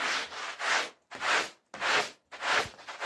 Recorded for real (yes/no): yes